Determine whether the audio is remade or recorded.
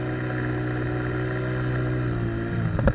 recorded